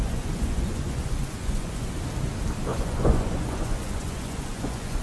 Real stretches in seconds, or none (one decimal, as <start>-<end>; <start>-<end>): 1.9-2.7